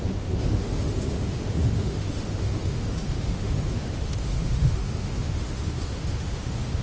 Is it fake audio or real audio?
fake